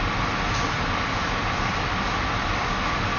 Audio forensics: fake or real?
real